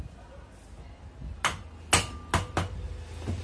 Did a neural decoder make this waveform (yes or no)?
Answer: no